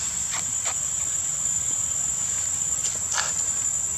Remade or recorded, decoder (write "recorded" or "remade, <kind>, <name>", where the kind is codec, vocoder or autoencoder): recorded